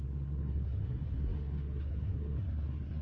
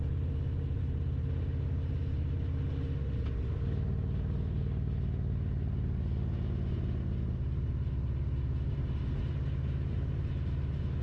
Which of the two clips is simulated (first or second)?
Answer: first